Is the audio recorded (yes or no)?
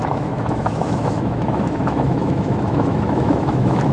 no